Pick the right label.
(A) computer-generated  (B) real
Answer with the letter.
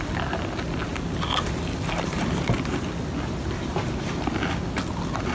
B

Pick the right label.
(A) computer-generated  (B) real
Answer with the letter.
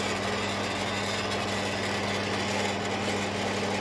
B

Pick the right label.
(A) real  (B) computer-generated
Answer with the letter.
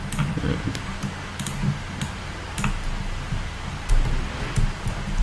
A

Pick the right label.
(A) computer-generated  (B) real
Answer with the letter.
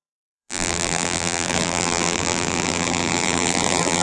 A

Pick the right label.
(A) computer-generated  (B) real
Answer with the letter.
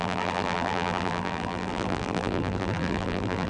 A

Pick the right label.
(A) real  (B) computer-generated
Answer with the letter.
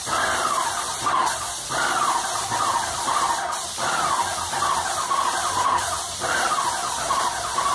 B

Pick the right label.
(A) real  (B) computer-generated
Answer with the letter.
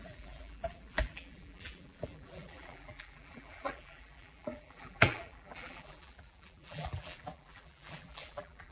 B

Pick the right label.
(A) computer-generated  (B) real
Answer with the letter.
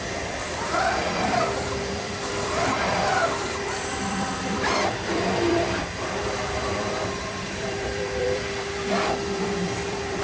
A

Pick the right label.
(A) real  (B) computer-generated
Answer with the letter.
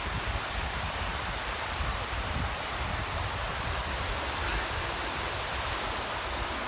A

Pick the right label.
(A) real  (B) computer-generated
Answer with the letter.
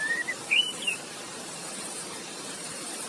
B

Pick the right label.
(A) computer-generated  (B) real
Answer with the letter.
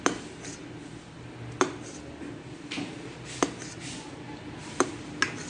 B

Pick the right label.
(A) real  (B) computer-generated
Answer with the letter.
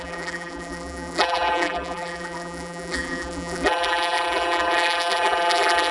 B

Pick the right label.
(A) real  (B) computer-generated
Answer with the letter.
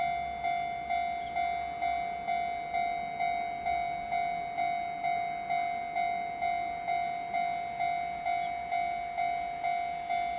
A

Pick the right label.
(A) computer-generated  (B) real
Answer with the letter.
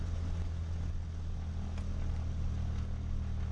B